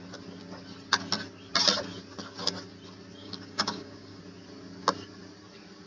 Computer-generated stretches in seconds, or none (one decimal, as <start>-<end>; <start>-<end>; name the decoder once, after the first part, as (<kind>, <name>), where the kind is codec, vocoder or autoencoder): 3.2-4.2 (codec, DAC)